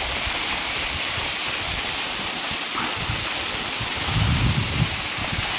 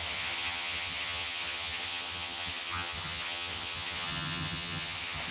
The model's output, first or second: second